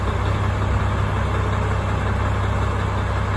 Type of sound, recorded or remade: recorded